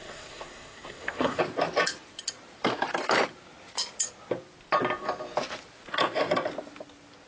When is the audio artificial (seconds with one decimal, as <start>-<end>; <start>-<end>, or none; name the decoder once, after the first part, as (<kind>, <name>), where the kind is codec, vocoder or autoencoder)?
0.0-1.4 (codec, SNAC)